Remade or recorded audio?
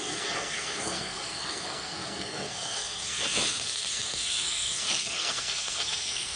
remade